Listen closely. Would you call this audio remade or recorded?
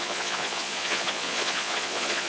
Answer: remade